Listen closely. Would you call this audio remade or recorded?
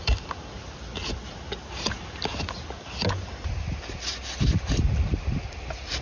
recorded